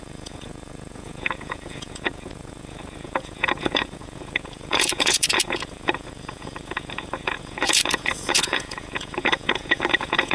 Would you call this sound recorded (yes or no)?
no